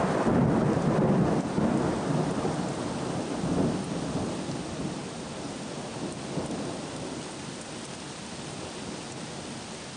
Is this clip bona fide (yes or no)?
yes